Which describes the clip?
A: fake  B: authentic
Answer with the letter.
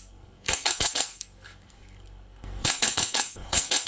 A